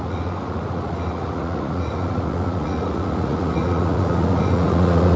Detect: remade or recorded remade